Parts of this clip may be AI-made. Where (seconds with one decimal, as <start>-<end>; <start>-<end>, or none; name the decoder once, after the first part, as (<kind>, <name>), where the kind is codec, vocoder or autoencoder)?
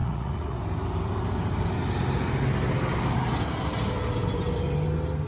0.0-0.6 (vocoder, Vocos)